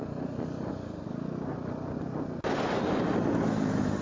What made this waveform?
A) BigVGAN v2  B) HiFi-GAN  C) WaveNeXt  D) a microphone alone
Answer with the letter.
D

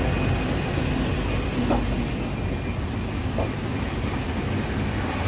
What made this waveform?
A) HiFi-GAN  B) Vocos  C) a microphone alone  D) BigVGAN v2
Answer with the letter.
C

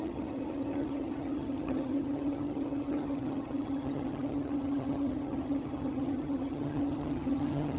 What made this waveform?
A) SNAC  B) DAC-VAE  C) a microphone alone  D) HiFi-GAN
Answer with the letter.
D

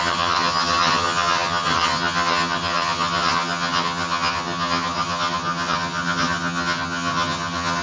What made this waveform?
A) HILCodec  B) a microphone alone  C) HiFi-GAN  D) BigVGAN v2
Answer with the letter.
C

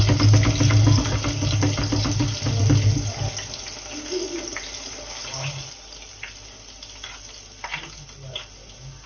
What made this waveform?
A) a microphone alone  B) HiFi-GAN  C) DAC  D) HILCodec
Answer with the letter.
A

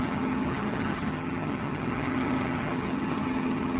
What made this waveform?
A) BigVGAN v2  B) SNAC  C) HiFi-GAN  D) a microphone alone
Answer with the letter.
C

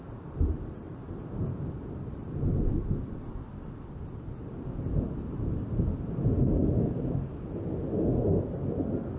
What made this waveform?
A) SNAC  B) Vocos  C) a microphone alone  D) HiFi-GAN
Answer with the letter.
C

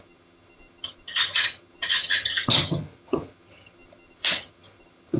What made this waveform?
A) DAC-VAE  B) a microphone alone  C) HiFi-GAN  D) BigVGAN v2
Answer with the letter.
C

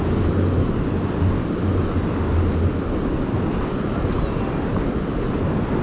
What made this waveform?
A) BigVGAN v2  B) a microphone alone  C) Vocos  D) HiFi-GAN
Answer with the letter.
B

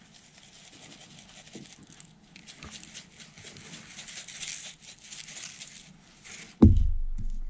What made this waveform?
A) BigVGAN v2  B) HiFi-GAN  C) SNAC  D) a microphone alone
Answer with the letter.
D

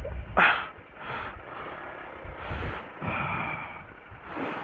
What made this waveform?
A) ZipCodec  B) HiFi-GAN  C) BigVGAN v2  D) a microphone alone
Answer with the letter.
D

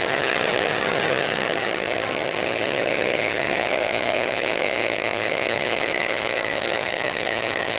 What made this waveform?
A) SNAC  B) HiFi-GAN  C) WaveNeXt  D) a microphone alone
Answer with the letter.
B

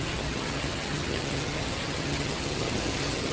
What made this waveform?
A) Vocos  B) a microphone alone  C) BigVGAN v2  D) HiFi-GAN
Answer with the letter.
D